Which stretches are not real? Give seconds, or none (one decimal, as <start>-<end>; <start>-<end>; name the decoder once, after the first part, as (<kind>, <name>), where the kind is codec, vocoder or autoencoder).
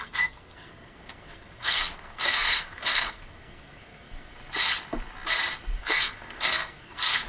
0.0-4.4 (codec, SNAC); 5.8-7.3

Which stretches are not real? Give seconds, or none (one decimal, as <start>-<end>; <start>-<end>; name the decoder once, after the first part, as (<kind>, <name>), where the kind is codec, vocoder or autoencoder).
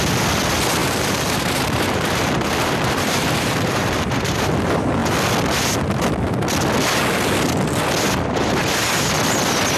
0.8-4.5 (vocoder, BigVGAN v2)